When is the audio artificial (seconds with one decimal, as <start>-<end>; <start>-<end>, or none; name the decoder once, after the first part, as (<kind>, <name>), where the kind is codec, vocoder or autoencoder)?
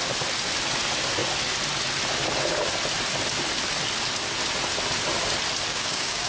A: 5.7-6.3 (codec, DAC)